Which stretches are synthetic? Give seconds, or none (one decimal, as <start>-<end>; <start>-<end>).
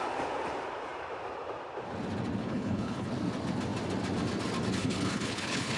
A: 2.4-3.1; 4.8-5.8